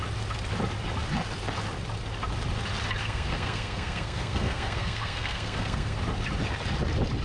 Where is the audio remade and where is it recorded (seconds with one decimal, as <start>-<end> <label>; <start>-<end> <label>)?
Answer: 0.0-3.0 recorded; 3.0-6.0 remade; 6.0-7.2 recorded